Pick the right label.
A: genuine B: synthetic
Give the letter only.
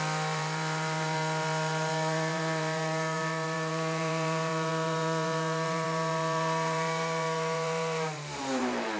B